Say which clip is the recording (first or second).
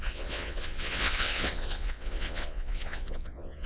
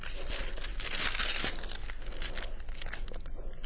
second